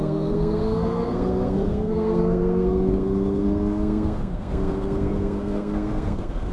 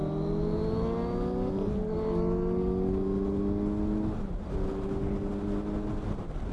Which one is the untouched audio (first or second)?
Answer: second